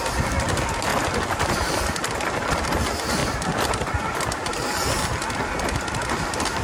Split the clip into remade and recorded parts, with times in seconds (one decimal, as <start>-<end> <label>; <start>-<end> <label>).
0.0-6.6 recorded